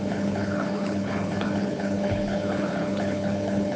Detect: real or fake fake